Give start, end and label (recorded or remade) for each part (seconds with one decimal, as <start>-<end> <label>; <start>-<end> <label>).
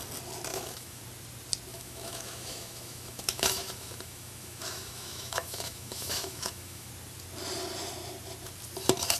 0.0-0.5 recorded; 0.5-1.0 remade; 1.0-1.7 recorded; 1.7-6.9 remade; 6.9-9.2 recorded